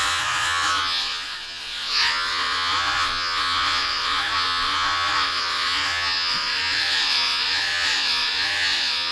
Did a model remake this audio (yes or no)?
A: yes